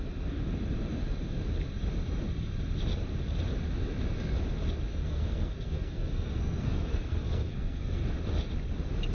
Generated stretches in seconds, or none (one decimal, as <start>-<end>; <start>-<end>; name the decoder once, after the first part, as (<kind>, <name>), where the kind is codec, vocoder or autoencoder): 4.9-8.0 (codec, SNAC)